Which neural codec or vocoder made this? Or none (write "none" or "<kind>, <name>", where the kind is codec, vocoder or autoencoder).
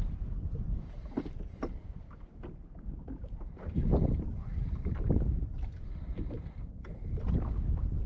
none